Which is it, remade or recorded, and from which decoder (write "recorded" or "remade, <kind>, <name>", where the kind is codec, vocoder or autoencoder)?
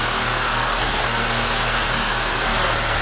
remade, codec, SNAC